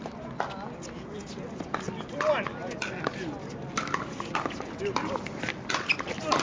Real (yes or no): yes